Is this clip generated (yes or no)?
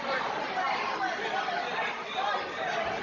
no